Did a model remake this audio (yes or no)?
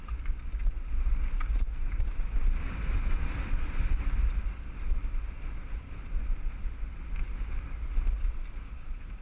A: no